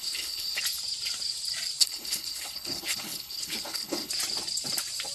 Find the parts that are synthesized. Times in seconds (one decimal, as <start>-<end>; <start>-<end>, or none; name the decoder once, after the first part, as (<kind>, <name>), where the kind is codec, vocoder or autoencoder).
0.0-0.6 (codec, HILCodec); 1.8-4.1